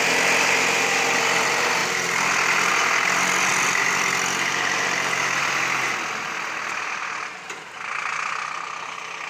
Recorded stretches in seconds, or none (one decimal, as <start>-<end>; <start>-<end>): 0.0-9.3